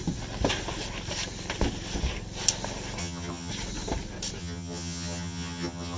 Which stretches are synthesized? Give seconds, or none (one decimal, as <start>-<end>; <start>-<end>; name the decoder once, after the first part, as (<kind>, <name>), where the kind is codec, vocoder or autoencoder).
3.0-3.5 (vocoder, HiFi-GAN); 4.4-6.0